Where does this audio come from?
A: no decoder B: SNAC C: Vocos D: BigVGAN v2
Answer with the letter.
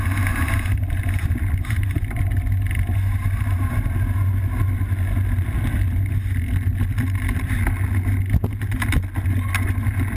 A